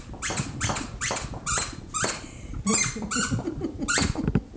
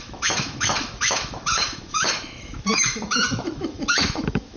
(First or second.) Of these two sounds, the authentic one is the first